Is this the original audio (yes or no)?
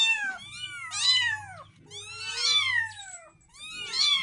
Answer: yes